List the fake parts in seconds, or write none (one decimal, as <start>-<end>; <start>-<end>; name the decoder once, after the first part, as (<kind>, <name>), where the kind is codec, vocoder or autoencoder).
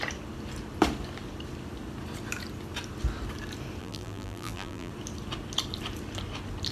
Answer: 3.8-4.9 (vocoder, BigVGAN v2)